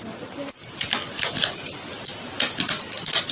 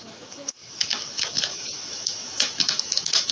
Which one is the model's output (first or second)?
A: second